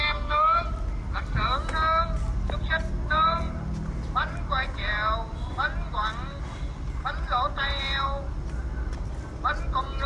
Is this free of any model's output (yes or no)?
yes